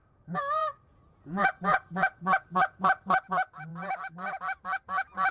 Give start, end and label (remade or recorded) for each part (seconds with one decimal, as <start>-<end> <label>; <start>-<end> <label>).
0.0-3.2 remade; 3.2-5.3 recorded